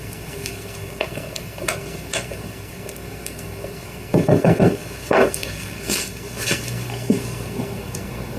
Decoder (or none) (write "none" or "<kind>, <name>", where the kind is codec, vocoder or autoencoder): codec, SNAC